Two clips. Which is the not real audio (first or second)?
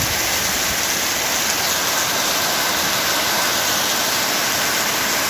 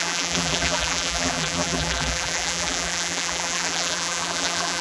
second